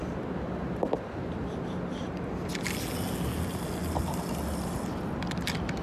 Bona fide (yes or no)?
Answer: yes